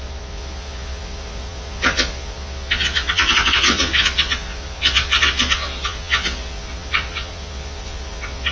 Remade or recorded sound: remade